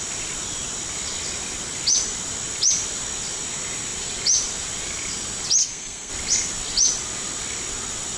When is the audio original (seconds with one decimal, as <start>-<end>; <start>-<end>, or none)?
0.0-5.6; 6.1-8.2